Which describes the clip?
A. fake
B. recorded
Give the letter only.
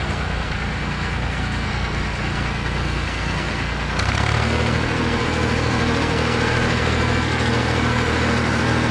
A